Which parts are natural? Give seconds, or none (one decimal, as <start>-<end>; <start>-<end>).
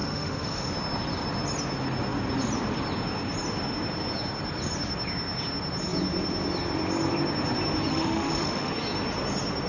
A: 0.7-7.9; 8.7-9.7